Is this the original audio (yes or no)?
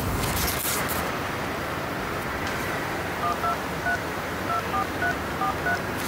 yes